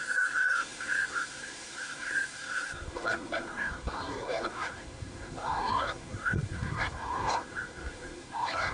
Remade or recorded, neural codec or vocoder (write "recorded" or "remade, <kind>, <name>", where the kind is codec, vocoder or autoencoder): remade, codec, SNAC